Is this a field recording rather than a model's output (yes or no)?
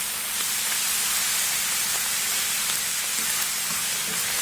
yes